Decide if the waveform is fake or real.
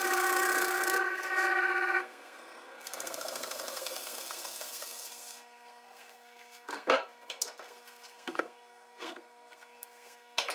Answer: fake